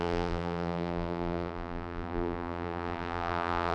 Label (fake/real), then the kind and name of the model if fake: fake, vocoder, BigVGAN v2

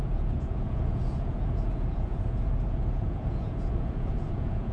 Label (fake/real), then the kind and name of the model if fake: fake, vocoder, Vocos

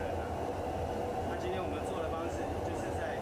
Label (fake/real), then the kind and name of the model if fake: real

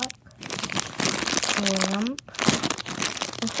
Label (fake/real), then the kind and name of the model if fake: real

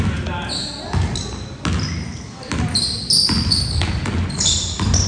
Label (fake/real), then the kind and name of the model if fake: real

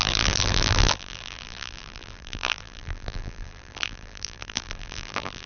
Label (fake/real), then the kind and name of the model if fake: fake, vocoder, BigVGAN v2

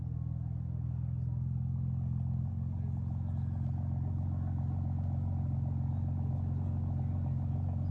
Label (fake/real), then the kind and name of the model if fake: real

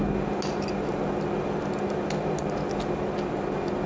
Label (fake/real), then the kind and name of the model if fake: real